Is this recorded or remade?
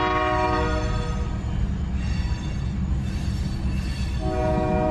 recorded